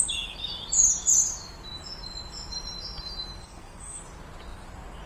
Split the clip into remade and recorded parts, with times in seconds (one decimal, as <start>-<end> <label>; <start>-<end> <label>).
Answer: 0.0-3.4 recorded; 3.4-4.0 remade; 4.0-5.1 recorded